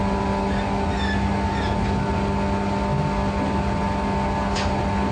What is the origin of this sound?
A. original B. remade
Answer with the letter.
A